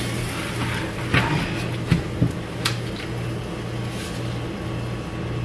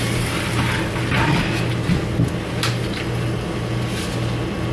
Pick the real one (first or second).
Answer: first